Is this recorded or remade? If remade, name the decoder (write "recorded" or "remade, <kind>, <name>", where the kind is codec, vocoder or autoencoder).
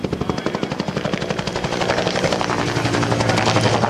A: recorded